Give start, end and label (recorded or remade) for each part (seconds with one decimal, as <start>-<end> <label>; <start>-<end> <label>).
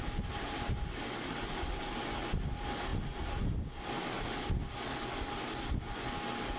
0.0-6.6 recorded